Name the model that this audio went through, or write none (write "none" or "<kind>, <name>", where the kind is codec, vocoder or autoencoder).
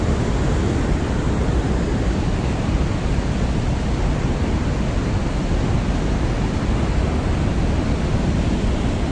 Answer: none